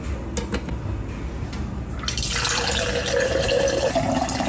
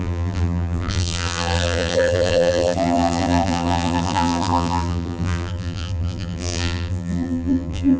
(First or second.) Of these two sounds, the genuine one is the first